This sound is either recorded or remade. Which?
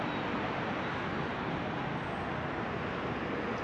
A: recorded